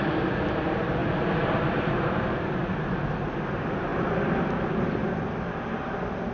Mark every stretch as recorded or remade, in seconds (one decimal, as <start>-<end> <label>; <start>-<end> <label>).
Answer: 0.0-3.9 recorded; 3.9-4.8 remade; 4.8-6.3 recorded